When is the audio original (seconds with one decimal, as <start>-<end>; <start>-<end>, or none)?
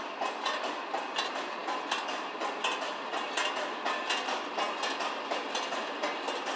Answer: 0.0-6.6